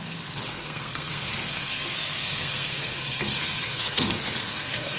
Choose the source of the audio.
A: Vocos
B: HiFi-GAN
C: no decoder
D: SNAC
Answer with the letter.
D